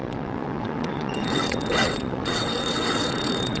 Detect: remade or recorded remade